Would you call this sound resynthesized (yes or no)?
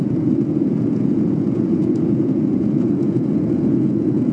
yes